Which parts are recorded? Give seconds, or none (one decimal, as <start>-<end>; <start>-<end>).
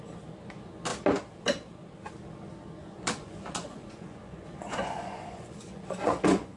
0.0-2.8